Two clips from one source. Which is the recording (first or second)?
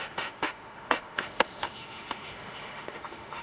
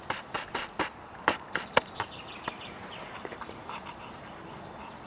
second